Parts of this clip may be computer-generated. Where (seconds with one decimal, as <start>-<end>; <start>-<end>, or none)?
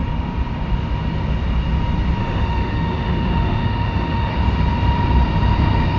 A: 2.2-4.3